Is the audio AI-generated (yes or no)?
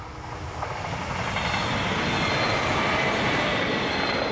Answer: no